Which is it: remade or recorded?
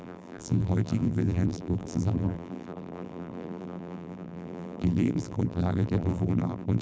remade